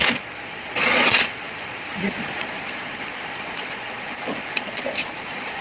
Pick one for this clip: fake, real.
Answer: fake